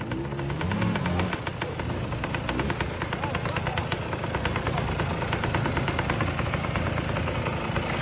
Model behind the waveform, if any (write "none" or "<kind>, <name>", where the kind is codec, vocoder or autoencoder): none